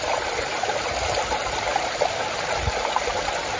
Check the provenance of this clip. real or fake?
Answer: real